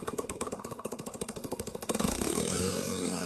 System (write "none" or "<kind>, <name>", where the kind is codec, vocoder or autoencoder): codec, SNAC